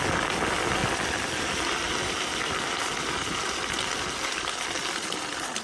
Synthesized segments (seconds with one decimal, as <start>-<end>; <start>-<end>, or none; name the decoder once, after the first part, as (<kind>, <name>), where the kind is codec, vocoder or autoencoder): 0.8-2.5 (vocoder, BigVGAN v2)